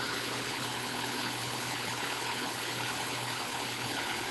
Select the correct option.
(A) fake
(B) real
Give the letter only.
A